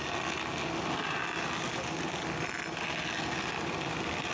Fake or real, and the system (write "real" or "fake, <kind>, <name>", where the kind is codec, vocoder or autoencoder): real